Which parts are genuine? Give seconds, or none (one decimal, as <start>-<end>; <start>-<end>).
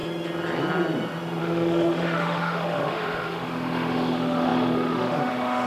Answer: 0.0-1.4